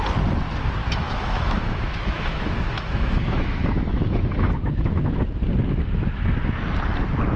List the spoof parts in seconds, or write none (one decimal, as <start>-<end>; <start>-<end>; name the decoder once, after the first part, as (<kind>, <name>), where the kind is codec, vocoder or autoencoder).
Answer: 0.8-5.2 (autoencoder, DAC-VAE)